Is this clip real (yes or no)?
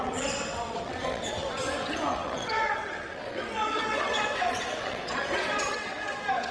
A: no